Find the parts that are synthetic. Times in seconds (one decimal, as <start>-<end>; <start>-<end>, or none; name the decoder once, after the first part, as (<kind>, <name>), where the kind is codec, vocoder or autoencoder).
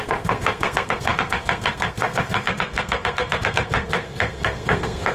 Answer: 0.0-5.1 (codec, SNAC)